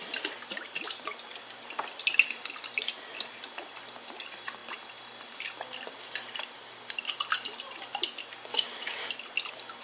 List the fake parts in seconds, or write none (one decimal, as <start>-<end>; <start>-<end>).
8.5-9.1